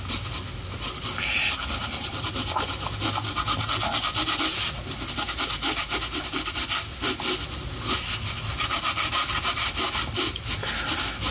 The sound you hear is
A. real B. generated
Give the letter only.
A